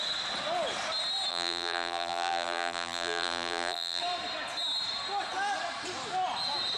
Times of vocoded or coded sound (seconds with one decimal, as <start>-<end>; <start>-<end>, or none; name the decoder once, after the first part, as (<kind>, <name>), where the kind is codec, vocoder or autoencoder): 1.3-4.0 (vocoder, BigVGAN v2)